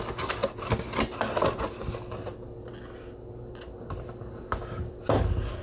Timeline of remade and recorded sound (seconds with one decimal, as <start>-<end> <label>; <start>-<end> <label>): 0.0-5.6 recorded